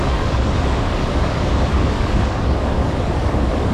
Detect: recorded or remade remade